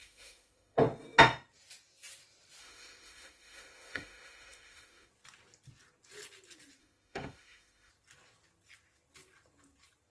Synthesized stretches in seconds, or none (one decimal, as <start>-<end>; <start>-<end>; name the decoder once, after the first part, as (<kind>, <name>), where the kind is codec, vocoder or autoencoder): 0.0-0.8 (autoencoder, DAC-VAE); 2.6-5.1; 6.8-7.9